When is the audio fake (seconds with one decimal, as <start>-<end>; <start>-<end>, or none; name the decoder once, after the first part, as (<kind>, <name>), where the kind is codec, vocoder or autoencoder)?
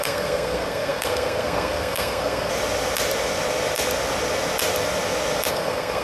0.0-2.5 (codec, SNAC); 5.5-6.0